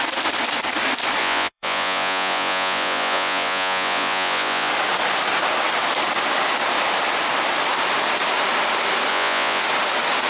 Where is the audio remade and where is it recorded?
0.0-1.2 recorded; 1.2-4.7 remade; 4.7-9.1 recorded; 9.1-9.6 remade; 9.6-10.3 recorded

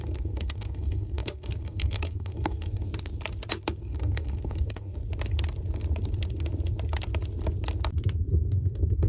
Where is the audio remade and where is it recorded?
0.0-2.9 remade; 2.9-3.8 recorded; 3.8-5.0 remade; 5.0-8.5 recorded; 8.5-9.1 remade

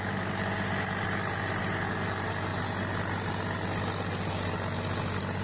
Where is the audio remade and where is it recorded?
0.0-5.4 recorded

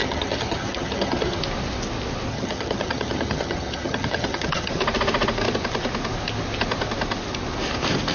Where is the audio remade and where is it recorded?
0.0-1.4 remade; 1.4-2.3 recorded; 2.3-4.7 remade; 4.7-8.1 recorded